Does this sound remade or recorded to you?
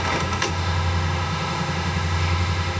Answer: remade